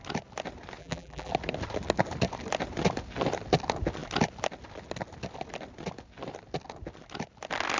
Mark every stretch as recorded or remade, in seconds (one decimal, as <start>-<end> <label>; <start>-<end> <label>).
0.0-0.8 recorded; 0.8-1.3 remade; 1.3-7.8 recorded